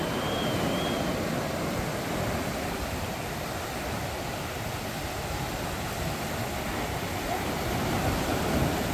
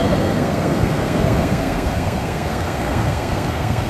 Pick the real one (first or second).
first